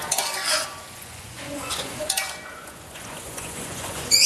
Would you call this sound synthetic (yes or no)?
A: yes